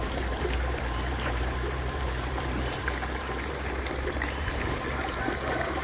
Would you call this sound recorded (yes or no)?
no